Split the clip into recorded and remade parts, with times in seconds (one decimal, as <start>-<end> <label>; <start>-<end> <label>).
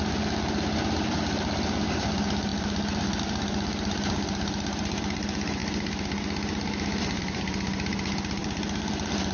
0.0-9.3 recorded